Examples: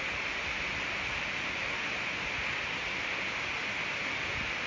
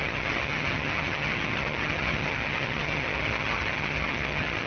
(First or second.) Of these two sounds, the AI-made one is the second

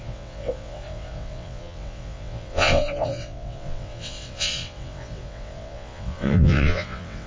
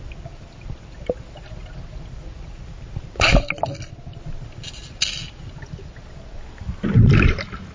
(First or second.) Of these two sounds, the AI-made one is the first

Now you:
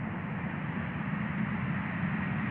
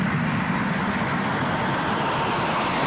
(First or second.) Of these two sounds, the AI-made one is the first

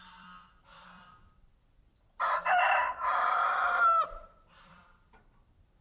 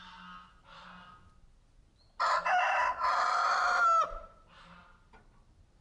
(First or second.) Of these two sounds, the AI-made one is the first